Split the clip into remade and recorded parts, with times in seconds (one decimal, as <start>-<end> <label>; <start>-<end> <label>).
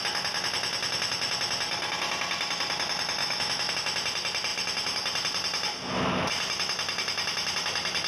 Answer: 0.0-3.2 recorded; 3.2-3.7 remade; 3.7-8.1 recorded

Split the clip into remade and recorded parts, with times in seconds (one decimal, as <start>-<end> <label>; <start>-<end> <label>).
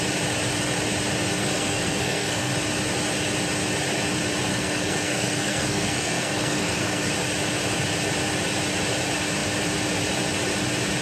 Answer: 0.0-1.4 recorded; 1.4-2.5 remade; 2.5-4.5 recorded; 4.5-7.1 remade; 7.1-11.0 recorded